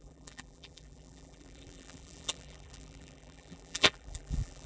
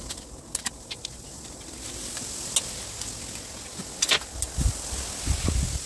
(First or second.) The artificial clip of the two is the first